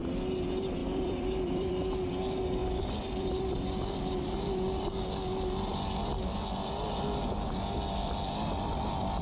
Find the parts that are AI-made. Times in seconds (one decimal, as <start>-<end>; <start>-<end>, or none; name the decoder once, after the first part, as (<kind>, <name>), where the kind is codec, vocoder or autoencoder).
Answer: 0.8-1.7 (vocoder, BigVGAN v2); 2.6-4.0